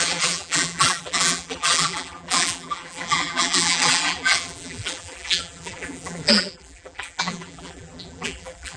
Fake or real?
fake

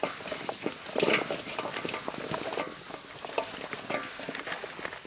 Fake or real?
real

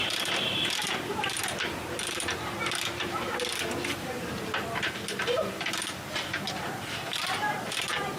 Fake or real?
fake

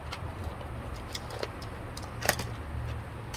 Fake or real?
real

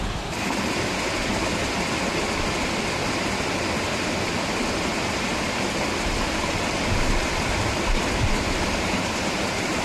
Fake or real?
fake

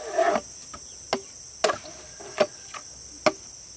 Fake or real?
real